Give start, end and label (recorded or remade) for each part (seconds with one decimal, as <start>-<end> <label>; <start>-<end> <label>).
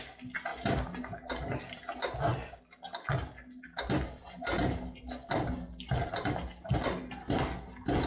0.0-8.1 recorded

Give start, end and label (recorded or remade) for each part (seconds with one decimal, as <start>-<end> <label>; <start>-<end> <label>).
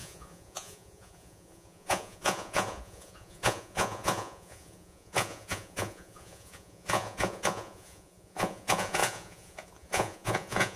0.0-10.8 remade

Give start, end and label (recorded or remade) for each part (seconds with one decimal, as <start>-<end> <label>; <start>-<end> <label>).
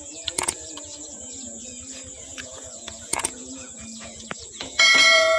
0.0-5.4 remade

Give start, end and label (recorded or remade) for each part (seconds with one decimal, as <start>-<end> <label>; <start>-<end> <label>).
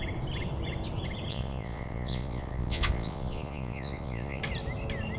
0.0-1.3 recorded; 1.3-4.4 remade; 4.4-5.2 recorded